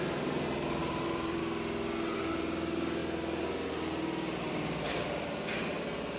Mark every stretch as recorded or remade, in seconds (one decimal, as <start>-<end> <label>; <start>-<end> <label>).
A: 0.0-0.8 recorded; 0.8-1.4 remade; 1.4-6.2 recorded